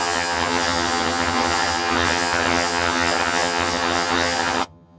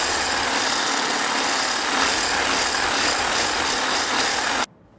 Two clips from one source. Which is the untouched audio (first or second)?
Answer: second